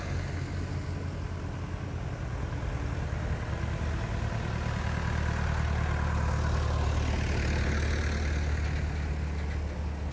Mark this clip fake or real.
real